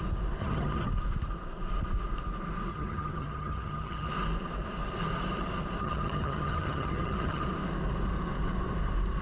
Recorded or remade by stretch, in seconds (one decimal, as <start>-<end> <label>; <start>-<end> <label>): 0.0-0.4 recorded; 0.4-0.9 remade; 0.9-2.7 recorded; 2.7-4.1 remade; 4.1-5.8 recorded; 5.8-7.4 remade; 7.4-9.2 recorded